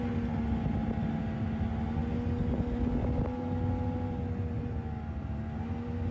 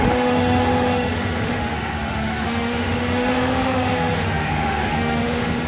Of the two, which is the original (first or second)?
first